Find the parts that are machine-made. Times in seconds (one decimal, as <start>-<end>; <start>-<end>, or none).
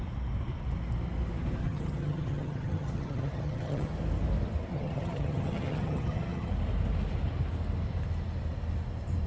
1.6-3.9; 4.7-6.5